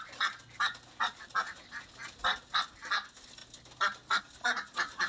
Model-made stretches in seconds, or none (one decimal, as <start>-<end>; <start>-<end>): none